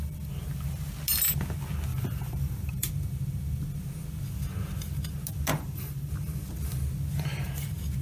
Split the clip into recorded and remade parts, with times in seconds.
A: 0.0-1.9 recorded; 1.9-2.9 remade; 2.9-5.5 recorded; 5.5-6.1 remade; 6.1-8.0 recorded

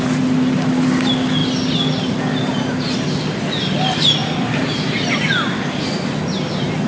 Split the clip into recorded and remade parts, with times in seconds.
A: 0.0-4.2 recorded; 4.2-5.8 remade; 5.8-6.9 recorded

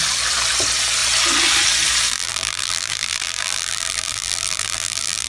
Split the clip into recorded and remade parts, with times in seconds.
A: 0.0-2.1 recorded; 2.1-5.3 remade

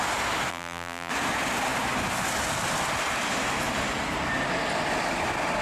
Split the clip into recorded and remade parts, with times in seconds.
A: 0.0-0.5 recorded; 0.5-1.1 remade; 1.1-5.6 recorded

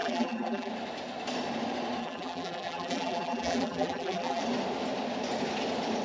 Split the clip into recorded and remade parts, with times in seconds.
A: 0.0-0.7 remade; 0.7-2.0 recorded; 2.0-4.4 remade; 4.4-6.0 recorded

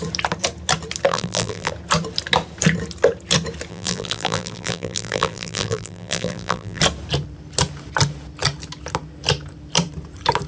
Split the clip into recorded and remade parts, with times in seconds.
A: 0.0-1.1 recorded; 1.1-1.7 remade; 1.7-3.7 recorded; 3.7-6.8 remade; 6.8-10.5 recorded